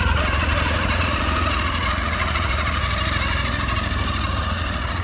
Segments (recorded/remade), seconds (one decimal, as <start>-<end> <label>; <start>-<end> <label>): 0.0-2.8 remade; 2.8-4.4 recorded; 4.4-5.0 remade